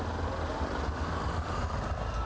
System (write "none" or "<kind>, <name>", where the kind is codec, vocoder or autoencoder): none